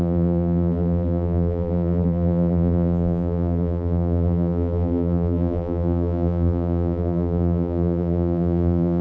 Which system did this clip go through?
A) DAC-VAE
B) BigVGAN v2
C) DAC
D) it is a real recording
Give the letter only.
B